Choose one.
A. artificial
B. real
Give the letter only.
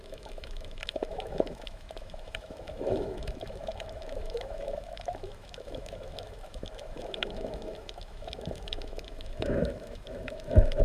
A